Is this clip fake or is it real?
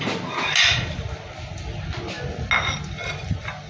real